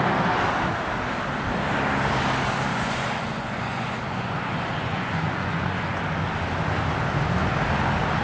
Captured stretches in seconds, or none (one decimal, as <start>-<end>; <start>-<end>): 0.0-2.7; 6.0-8.2